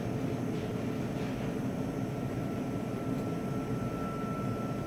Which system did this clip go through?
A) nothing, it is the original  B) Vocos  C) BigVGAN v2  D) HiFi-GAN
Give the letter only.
A